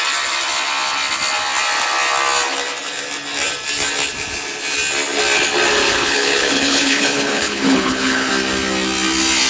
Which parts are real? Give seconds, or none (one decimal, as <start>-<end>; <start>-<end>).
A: 0.0-5.9; 8.3-9.5